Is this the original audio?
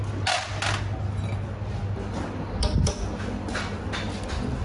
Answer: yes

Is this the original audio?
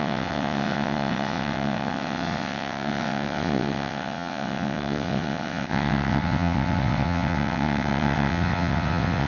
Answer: no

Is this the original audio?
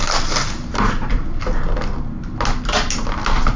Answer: yes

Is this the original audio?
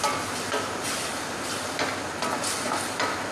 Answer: yes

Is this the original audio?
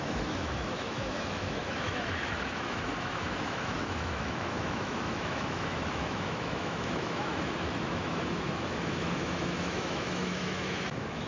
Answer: no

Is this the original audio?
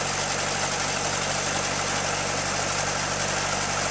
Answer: yes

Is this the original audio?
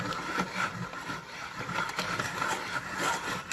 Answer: yes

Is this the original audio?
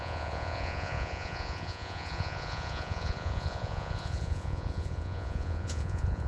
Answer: no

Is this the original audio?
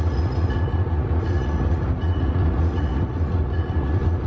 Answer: no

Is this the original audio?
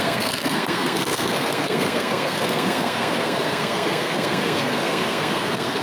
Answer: no